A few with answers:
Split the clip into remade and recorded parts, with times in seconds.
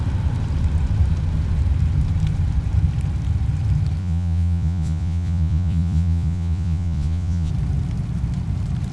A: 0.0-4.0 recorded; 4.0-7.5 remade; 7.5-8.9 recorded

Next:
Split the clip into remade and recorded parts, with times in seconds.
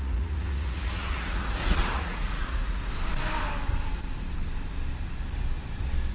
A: 0.0-2.8 remade; 2.8-6.1 recorded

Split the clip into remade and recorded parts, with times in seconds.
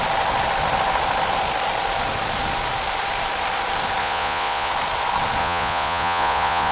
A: 0.0-4.0 recorded; 4.0-4.7 remade; 4.7-5.4 recorded; 5.4-6.7 remade